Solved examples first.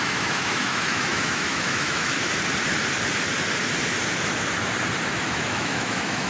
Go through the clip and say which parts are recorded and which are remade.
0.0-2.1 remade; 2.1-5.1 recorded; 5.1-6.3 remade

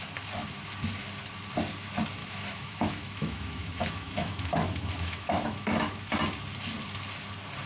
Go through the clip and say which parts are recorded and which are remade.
0.0-2.2 recorded; 2.2-6.1 remade; 6.1-7.7 recorded

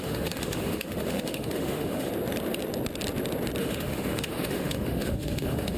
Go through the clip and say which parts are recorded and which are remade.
0.0-2.1 remade; 2.1-3.6 recorded; 3.6-5.8 remade

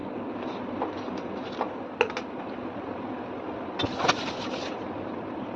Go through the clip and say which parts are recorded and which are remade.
0.0-5.6 recorded

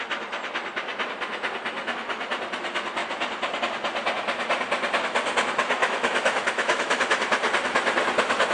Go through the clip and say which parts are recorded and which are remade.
0.0-5.8 recorded; 5.8-7.0 remade; 7.0-8.5 recorded

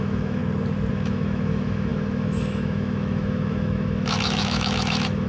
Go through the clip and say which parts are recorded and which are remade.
0.0-0.4 remade; 0.4-0.9 recorded; 0.9-5.3 remade

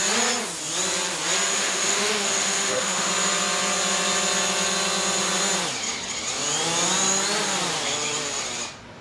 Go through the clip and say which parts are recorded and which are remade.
0.0-1.5 recorded; 1.5-3.1 remade; 3.1-9.0 recorded